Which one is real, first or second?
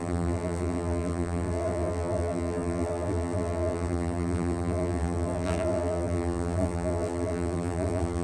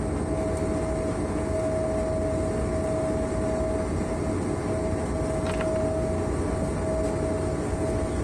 second